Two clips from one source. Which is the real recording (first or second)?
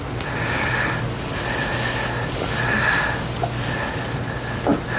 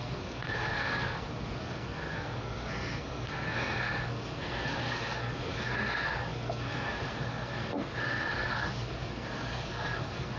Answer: first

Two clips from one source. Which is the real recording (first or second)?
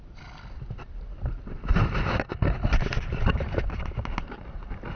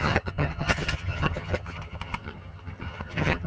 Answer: first